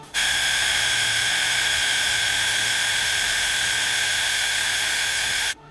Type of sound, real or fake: fake